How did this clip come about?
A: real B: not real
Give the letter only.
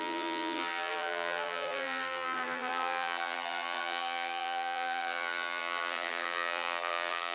B